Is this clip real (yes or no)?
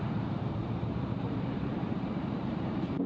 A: no